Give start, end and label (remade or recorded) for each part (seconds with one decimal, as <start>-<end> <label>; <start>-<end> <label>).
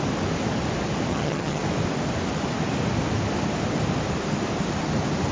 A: 0.0-1.1 recorded; 1.1-1.6 remade; 1.6-5.3 recorded